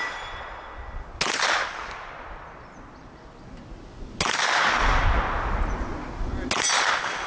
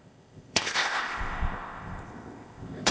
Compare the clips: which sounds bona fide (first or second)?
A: first